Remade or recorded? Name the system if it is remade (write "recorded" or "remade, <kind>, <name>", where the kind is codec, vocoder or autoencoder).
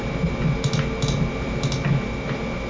recorded